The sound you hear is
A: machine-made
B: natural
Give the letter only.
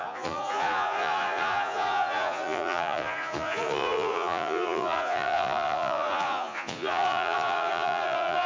A